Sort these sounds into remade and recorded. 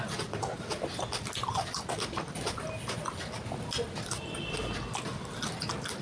recorded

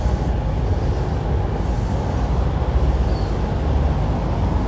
recorded